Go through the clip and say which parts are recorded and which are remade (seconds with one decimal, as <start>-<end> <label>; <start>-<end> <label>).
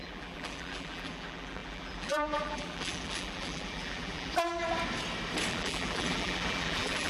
0.0-4.3 remade; 4.3-5.5 recorded; 5.5-7.1 remade